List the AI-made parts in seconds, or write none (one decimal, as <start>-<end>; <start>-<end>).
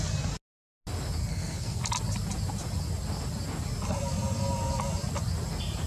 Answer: 1.2-1.8